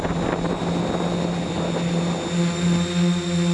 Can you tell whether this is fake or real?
real